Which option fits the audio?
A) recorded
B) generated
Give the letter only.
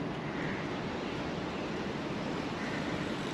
A